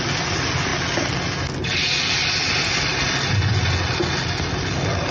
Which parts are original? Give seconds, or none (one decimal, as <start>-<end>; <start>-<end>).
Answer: 0.0-5.1